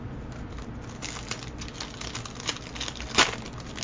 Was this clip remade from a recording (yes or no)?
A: no